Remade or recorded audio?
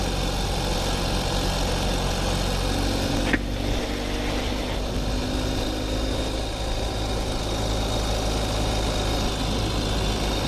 recorded